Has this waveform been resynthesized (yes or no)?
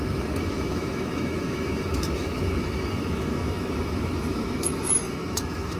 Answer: yes